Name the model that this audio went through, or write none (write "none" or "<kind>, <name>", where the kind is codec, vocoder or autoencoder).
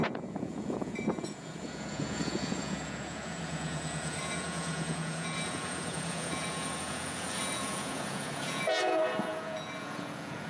vocoder, Vocos